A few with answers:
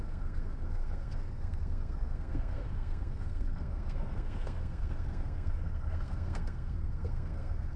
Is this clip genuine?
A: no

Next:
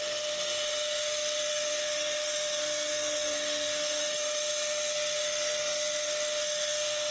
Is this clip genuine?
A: no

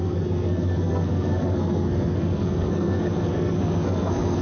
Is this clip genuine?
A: no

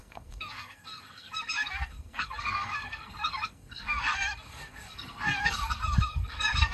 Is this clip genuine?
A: no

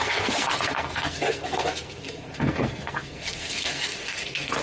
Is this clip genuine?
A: no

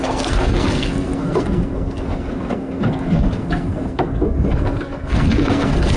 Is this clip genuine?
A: no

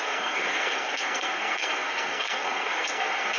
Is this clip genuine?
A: no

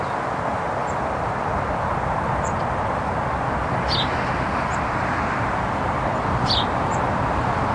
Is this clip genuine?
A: yes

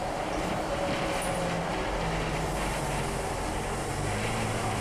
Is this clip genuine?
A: yes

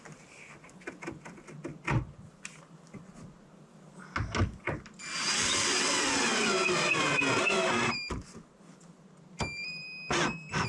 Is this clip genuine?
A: yes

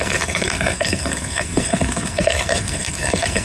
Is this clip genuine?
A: no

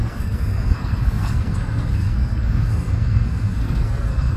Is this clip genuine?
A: no